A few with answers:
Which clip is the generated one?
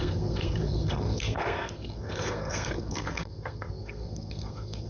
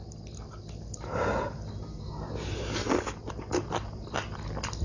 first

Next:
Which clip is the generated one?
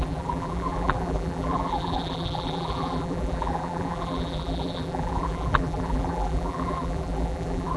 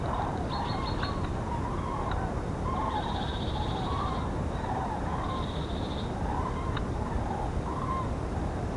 first